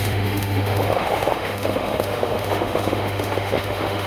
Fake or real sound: fake